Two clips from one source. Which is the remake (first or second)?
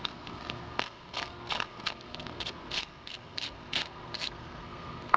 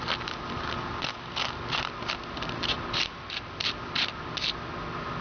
first